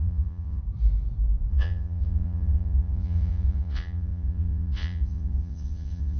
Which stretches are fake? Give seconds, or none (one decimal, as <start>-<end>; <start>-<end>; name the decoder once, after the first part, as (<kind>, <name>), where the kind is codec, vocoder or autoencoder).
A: 0.0-0.6 (vocoder, Vocos); 1.5-6.2